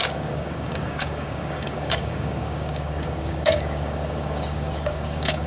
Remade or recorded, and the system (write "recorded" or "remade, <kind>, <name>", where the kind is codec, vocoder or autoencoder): remade, codec, DAC